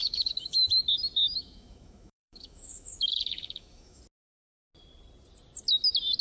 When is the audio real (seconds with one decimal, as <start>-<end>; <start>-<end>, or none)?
0.7-1.2; 4.0-6.2